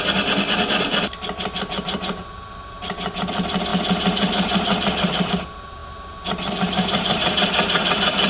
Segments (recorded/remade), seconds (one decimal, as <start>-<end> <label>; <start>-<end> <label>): 0.0-8.3 recorded